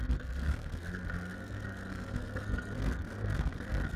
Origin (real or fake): fake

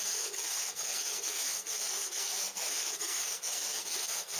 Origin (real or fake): fake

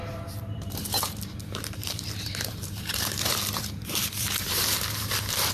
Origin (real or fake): fake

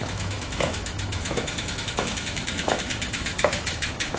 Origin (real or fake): fake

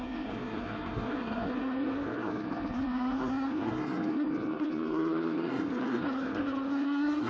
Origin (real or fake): fake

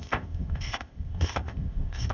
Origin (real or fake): fake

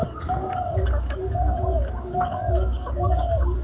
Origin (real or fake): fake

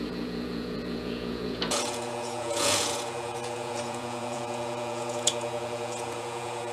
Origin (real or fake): fake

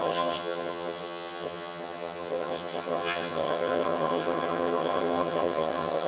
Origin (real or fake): fake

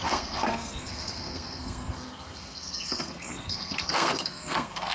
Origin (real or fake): fake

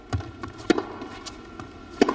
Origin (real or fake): real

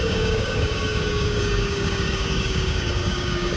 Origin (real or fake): fake